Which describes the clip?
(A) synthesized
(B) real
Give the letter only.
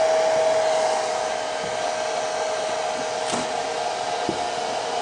B